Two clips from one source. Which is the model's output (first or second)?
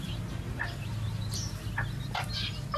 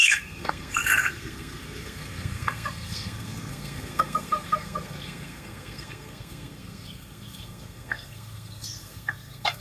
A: second